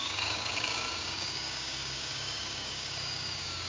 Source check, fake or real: fake